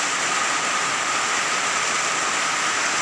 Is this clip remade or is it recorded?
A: recorded